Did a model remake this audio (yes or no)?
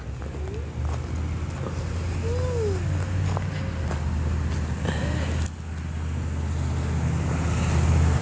no